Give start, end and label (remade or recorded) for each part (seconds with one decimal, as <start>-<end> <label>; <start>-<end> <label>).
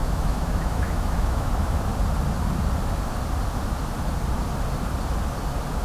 0.0-1.9 remade; 1.9-5.8 recorded